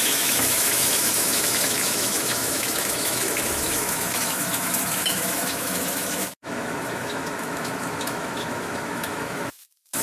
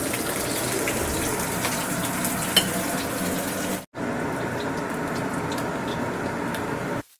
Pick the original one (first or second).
second